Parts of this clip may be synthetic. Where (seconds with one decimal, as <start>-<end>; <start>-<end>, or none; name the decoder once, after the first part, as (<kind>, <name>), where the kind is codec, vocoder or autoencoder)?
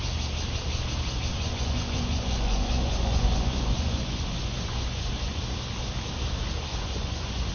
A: 1.3-5.4 (vocoder, Vocos); 6.7-7.5